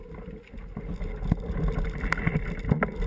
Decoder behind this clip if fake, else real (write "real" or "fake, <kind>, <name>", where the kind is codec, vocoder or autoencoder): real